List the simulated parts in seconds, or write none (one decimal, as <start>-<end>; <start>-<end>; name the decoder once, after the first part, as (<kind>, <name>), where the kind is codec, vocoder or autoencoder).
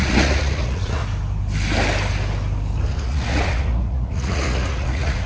0.0-1.0 (vocoder, Vocos); 2.9-5.3